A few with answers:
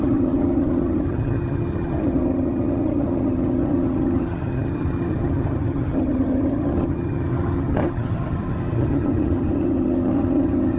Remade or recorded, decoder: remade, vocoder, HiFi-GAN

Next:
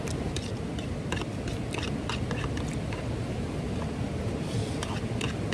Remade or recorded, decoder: remade, vocoder, BigVGAN v2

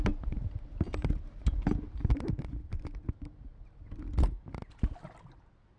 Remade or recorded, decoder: recorded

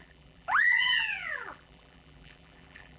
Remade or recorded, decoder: remade, vocoder, BigVGAN v2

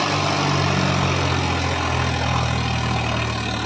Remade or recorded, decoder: recorded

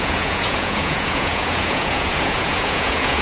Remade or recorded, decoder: remade, vocoder, Vocos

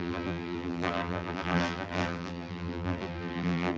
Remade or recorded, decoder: remade, vocoder, BigVGAN v2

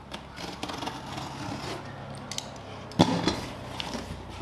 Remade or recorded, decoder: recorded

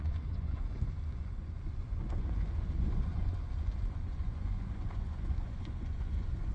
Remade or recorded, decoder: remade, vocoder, Vocos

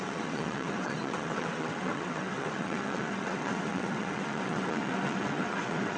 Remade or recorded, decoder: remade, vocoder, WaveNeXt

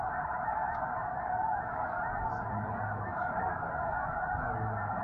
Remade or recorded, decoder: recorded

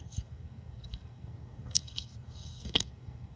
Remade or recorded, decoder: remade, codec, SNAC